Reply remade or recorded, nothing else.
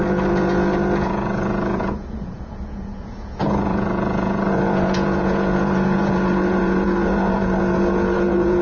remade